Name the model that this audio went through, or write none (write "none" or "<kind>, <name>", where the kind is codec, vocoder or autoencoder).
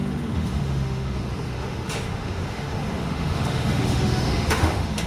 autoencoder, DAC-VAE